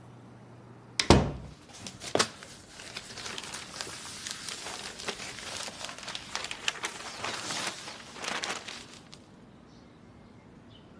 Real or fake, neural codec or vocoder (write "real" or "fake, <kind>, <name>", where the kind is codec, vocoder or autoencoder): real